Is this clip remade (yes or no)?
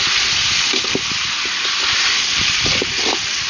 no